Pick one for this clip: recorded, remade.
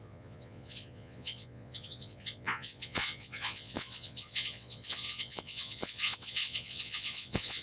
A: remade